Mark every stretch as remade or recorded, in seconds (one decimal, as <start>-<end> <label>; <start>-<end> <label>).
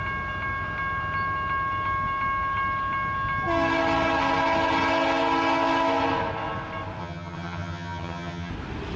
0.0-7.0 recorded; 7.0-8.5 remade; 8.5-9.0 recorded